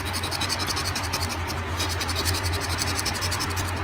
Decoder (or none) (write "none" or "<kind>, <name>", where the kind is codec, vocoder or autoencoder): none